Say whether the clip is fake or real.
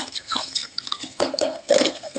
fake